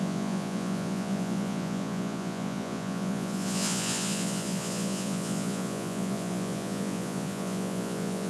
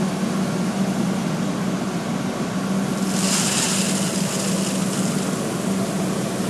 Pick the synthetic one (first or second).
first